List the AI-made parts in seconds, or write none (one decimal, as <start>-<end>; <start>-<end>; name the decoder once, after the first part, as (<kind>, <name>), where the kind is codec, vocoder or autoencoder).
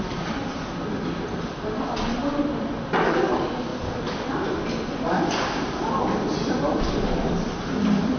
0.0-0.4 (vocoder, BigVGAN v2); 2.6-3.7; 6.8-8.2